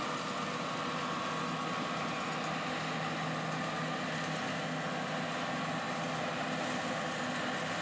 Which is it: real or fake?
real